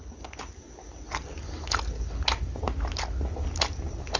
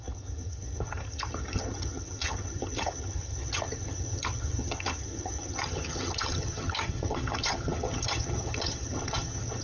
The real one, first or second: first